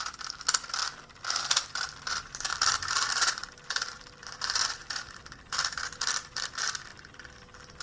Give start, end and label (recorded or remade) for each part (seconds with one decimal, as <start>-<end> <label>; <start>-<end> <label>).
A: 0.0-0.8 remade; 0.8-2.5 recorded; 2.5-6.9 remade; 6.9-7.8 recorded